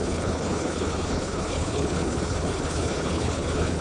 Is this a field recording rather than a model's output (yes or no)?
no